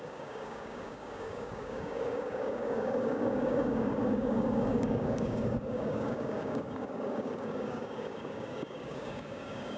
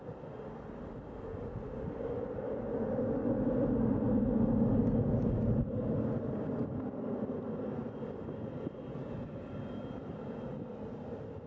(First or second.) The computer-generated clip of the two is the first